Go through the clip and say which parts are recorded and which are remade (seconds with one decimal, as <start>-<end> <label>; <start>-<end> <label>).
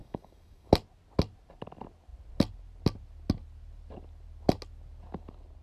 0.0-0.7 remade; 0.7-5.6 recorded